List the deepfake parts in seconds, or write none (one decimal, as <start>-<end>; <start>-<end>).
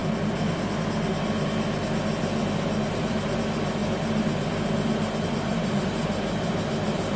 2.9-3.8; 5.2-7.2